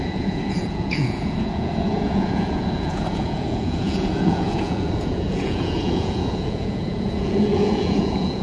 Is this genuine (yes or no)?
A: no